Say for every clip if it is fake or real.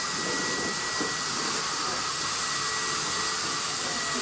real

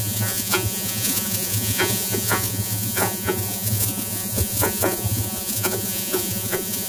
fake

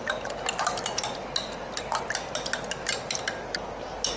real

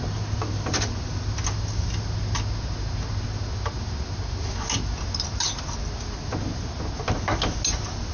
real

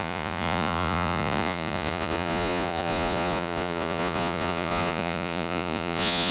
fake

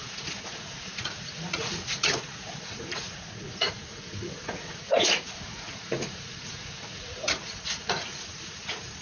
fake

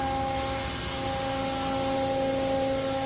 real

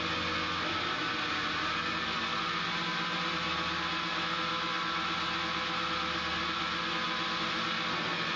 real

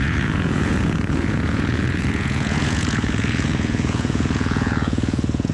fake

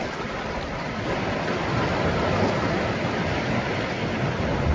real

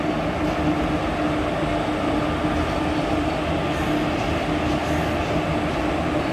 real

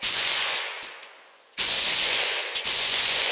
fake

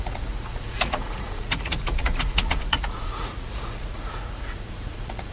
fake